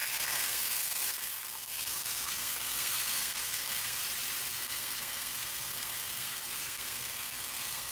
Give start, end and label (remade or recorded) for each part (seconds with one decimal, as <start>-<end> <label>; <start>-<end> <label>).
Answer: 0.0-4.0 remade; 4.0-4.5 recorded; 4.5-7.9 remade